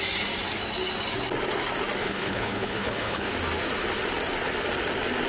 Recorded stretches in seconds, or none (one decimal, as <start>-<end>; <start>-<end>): 0.0-2.0; 3.3-5.3

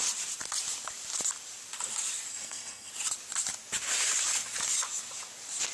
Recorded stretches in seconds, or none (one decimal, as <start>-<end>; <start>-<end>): 0.0-2.3; 2.9-5.7

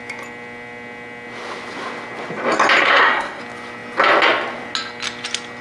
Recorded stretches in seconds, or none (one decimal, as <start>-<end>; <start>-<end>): 0.0-2.8; 3.4-5.6

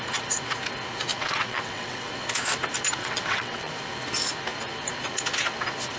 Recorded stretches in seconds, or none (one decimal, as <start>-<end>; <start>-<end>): 0.0-1.1; 2.1-3.0; 3.7-6.0

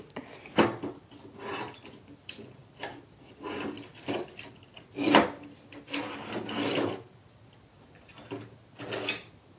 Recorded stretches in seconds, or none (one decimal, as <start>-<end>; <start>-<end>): 0.0-9.6

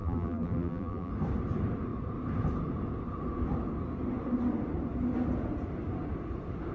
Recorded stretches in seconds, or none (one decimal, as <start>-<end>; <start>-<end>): 1.1-6.7

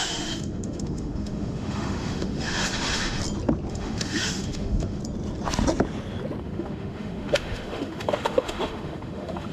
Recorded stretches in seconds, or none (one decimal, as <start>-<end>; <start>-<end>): 3.2-3.7; 5.0-6.4